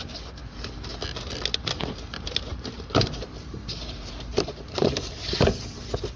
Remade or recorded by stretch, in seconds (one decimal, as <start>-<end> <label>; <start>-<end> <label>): 0.0-2.5 recorded; 2.5-5.8 remade; 5.8-6.2 recorded